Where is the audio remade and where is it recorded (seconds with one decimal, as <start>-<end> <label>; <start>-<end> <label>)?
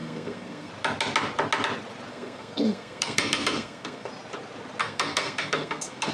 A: 0.0-0.7 remade; 0.7-2.1 recorded; 2.1-4.1 remade; 4.1-4.8 recorded; 4.8-6.1 remade